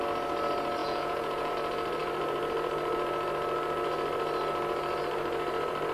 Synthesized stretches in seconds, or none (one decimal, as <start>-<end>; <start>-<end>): 0.8-1.5